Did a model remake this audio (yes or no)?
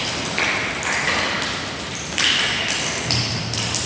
no